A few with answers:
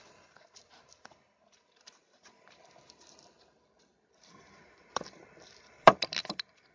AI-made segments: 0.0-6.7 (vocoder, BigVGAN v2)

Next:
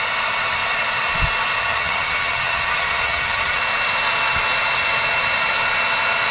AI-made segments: 1.6-3.6 (vocoder, HiFi-GAN)